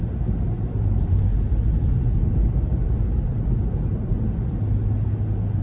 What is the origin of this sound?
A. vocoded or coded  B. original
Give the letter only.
B